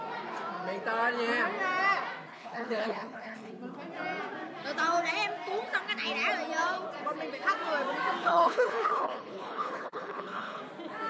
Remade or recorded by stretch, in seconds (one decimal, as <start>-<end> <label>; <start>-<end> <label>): 0.0-2.3 recorded; 2.3-3.5 remade; 3.5-8.2 recorded; 8.2-10.6 remade; 10.6-11.1 recorded